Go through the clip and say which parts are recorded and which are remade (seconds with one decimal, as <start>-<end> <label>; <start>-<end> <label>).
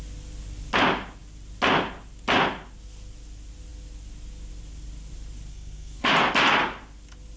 0.0-5.5 recorded; 5.5-6.1 remade; 6.1-7.4 recorded